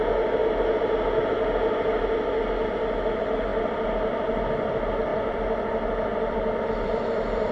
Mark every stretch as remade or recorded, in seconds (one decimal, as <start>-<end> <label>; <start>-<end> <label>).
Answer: 0.0-3.5 recorded; 3.5-4.4 remade; 4.4-5.1 recorded; 5.1-7.5 remade